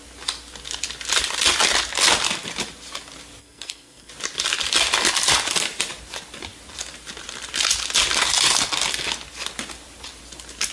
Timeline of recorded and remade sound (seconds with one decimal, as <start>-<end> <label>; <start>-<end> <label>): 0.0-3.4 recorded; 3.4-4.1 remade; 4.1-10.7 recorded

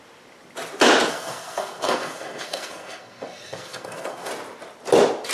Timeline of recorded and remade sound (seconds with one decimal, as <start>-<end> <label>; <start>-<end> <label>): 0.0-1.1 recorded; 1.1-4.3 remade; 4.3-5.3 recorded

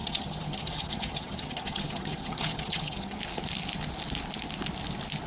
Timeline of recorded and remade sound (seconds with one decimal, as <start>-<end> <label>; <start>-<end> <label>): 0.0-3.2 remade; 3.2-5.3 recorded

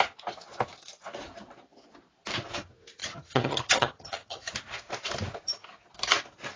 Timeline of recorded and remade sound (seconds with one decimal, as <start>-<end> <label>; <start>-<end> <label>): 0.0-3.0 recorded; 3.0-4.5 remade; 4.5-6.6 recorded

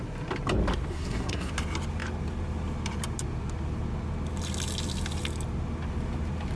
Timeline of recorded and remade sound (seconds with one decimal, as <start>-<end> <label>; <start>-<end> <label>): 0.0-0.9 recorded; 0.9-1.5 remade; 1.5-6.6 recorded